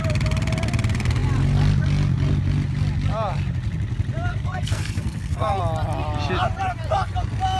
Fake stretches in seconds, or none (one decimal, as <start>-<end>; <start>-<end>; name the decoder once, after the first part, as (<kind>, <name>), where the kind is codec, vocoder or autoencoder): 4.3-5.6 (codec, SNAC)